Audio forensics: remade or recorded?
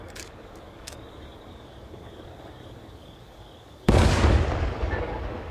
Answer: remade